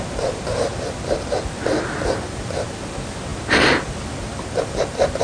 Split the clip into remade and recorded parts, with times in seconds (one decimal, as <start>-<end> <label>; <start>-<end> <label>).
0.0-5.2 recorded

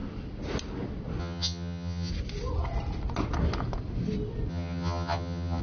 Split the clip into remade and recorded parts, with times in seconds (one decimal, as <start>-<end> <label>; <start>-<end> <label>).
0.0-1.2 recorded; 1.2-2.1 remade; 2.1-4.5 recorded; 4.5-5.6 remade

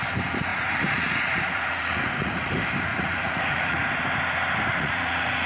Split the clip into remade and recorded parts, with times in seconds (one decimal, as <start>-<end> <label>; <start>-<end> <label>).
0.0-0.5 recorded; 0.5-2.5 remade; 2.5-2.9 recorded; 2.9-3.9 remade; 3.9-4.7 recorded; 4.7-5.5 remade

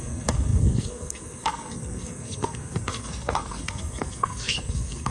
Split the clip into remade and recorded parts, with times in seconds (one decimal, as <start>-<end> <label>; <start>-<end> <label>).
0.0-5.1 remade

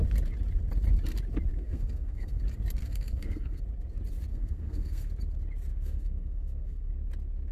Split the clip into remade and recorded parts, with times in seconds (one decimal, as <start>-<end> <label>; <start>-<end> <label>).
0.0-1.5 recorded; 1.5-2.4 remade; 2.4-2.8 recorded; 2.8-3.6 remade; 3.6-4.3 recorded; 4.3-5.1 remade; 5.1-5.7 recorded; 5.7-6.9 remade; 6.9-7.5 recorded